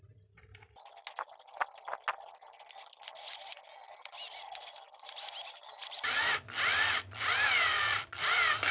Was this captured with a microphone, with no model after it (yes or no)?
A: yes